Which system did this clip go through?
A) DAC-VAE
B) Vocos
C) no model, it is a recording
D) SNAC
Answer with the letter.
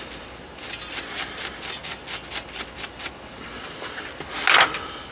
C